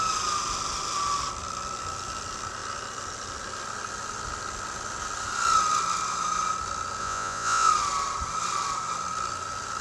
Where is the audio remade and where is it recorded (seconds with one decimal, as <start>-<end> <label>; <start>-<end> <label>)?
0.0-7.0 recorded; 7.0-7.7 remade; 7.7-9.8 recorded